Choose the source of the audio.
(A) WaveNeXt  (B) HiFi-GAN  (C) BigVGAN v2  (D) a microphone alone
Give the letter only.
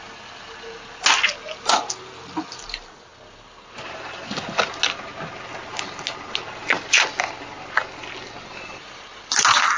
D